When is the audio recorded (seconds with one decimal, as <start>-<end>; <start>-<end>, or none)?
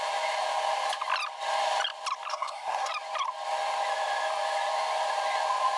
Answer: 0.0-2.3; 2.9-5.8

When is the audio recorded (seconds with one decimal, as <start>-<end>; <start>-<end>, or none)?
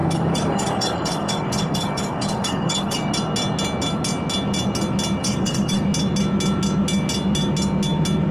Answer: 3.1-5.2; 5.8-8.3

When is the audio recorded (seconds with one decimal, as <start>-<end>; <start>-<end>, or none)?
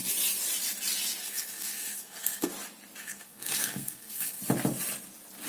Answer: 0.0-1.2; 2.5-3.0; 4.4-5.5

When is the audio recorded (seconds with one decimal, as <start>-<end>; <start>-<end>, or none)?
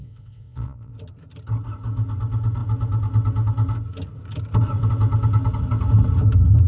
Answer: 0.9-6.7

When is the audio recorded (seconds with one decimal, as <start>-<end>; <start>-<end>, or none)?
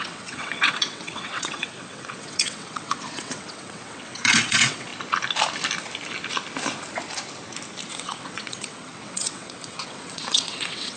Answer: 4.9-7.9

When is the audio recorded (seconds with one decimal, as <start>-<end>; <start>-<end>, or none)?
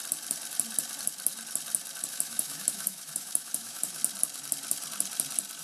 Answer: 0.0-2.1; 4.0-5.6